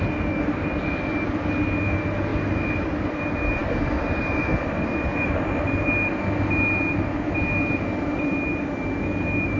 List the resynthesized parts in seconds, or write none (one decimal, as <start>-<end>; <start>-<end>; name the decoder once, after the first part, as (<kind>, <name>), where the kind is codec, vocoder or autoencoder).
none